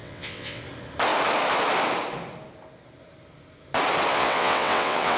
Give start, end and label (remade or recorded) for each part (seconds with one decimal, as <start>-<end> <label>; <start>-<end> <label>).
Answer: 0.0-0.6 remade; 0.6-4.1 recorded; 4.1-5.2 remade